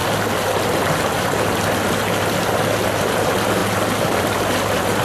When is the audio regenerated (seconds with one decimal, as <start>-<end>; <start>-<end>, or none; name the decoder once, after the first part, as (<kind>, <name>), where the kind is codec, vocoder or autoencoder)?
3.6-4.3 (vocoder, BigVGAN v2)